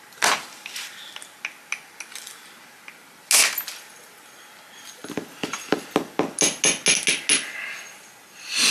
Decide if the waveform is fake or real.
real